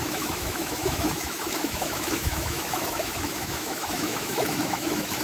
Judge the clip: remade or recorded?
remade